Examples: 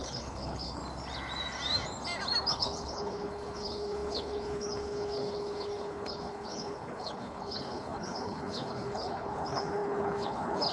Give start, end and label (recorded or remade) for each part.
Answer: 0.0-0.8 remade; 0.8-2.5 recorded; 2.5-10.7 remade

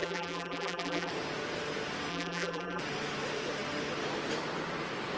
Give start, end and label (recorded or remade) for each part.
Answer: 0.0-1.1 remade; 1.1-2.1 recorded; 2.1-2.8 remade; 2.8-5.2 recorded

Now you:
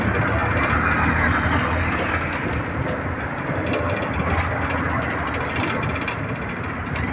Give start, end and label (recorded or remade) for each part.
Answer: 0.0-7.1 recorded

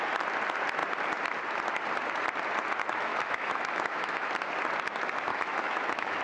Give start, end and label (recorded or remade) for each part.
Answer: 0.0-3.1 recorded; 3.1-4.3 remade; 4.3-5.3 recorded; 5.3-6.2 remade

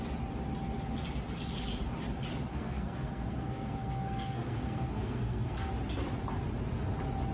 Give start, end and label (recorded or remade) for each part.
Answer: 0.0-2.5 recorded; 2.5-5.7 remade; 5.7-7.3 recorded

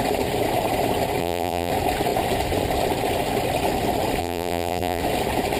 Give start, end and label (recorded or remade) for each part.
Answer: 0.0-1.2 recorded; 1.2-1.7 remade; 1.7-4.2 recorded; 4.2-5.0 remade; 5.0-5.6 recorded